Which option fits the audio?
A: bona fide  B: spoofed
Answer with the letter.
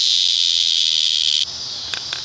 A